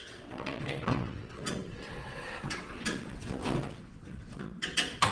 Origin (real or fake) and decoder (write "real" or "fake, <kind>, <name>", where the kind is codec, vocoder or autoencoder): fake, vocoder, WaveNeXt